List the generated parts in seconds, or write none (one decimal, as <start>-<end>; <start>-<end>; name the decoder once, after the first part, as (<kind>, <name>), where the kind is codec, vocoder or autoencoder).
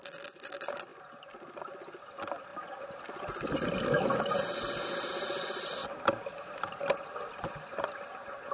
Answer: none